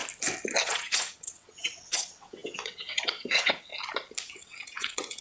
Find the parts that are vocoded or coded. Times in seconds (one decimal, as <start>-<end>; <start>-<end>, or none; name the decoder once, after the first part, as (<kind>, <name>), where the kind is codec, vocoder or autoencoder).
0.6-3.7 (vocoder, WaveNeXt); 4.2-5.2